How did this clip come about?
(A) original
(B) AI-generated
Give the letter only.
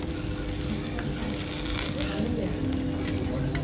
A